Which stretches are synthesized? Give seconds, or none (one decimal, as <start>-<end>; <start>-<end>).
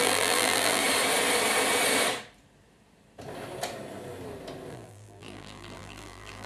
0.0-0.8; 4.7-6.5